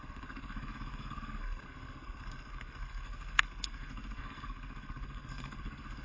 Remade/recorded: remade